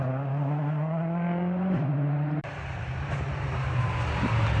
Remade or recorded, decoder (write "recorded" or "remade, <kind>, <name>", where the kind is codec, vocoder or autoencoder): recorded